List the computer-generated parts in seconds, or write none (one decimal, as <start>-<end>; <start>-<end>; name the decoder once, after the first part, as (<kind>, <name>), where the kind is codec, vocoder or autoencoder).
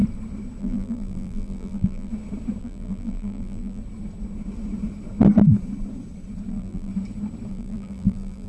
0.6-2.1 (vocoder, BigVGAN v2); 2.6-3.8; 6.5-6.9; 7.5-8.5